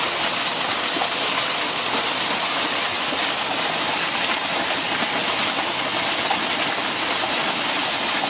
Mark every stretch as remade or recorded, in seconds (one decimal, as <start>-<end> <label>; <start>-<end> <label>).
0.0-8.3 recorded